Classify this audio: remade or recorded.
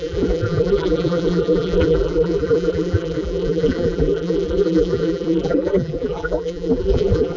remade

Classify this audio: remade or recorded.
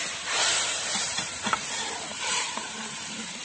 remade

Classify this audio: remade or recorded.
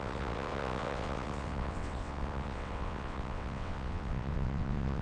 remade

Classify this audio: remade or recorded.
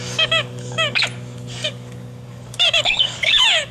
remade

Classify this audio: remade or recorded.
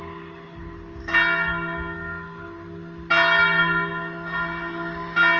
recorded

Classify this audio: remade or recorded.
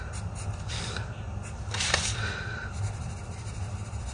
recorded